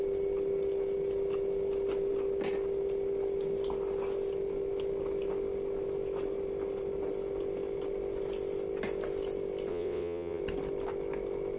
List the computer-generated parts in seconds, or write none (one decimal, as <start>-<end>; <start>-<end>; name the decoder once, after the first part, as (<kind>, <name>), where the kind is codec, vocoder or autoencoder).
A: 9.7-10.4 (vocoder, WaveNeXt)